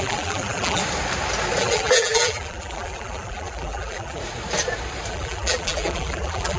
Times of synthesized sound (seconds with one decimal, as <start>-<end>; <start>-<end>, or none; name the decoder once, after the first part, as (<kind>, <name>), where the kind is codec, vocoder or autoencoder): 0.0-0.8 (vocoder, BigVGAN v2); 1.6-4.2; 5.1-6.6